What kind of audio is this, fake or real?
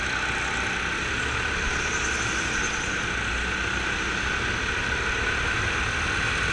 real